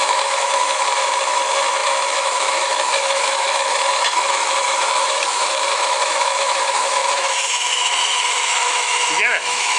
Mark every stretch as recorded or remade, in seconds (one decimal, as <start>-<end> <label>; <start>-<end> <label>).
0.0-9.8 remade